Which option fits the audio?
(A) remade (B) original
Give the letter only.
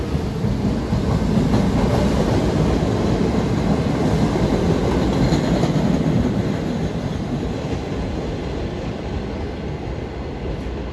B